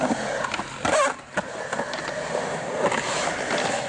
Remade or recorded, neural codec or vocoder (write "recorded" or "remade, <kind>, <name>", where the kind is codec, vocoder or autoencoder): recorded